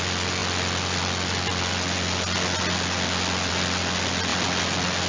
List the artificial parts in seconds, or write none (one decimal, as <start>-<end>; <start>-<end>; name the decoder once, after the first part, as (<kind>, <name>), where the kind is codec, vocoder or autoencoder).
none